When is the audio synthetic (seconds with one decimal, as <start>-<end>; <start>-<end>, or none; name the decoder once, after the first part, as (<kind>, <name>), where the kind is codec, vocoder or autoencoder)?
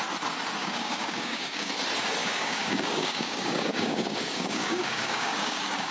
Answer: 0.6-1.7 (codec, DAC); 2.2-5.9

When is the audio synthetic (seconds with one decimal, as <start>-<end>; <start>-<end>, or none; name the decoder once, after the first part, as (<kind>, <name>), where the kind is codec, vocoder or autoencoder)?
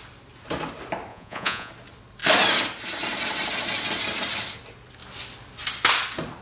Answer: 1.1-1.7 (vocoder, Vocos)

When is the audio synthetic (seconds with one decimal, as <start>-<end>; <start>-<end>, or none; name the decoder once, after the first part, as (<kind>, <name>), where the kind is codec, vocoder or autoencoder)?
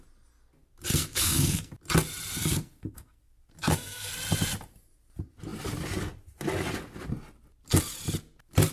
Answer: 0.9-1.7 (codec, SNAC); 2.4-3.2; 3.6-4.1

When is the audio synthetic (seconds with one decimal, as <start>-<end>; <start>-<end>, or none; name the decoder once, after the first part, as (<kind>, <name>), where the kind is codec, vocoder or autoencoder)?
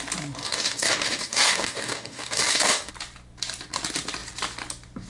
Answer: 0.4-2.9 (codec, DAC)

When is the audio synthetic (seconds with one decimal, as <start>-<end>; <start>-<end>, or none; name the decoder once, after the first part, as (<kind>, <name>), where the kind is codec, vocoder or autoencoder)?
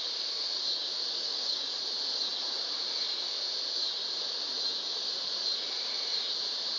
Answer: 1.2-1.8 (codec, DAC)